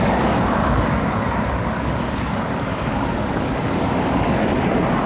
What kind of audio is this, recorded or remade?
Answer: remade